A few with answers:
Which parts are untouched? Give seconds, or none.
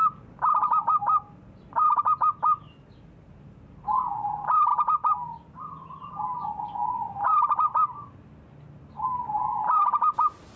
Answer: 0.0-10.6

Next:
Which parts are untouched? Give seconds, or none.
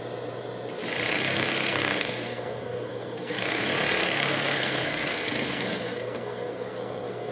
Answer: 0.0-1.1; 3.6-4.0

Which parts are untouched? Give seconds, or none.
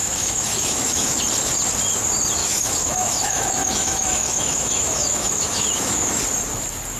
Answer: 1.2-2.4; 6.2-7.0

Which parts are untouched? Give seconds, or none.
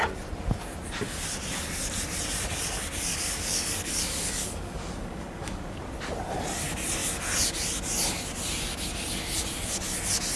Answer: 0.0-3.1; 5.8-10.4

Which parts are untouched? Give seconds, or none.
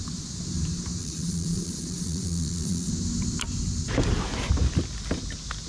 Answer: 0.0-1.0; 2.9-5.7